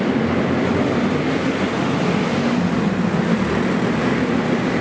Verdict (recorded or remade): recorded